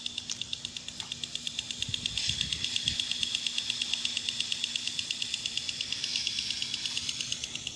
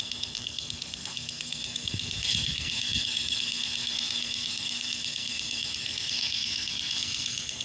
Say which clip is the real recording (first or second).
first